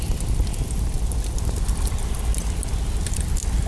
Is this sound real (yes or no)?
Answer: yes